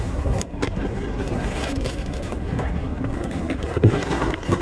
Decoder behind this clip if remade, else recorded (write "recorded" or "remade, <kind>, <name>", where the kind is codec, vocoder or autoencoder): remade, codec, SNAC